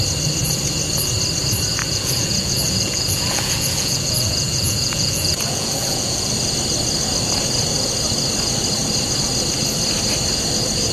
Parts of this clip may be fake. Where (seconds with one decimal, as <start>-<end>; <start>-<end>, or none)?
1.8-6.3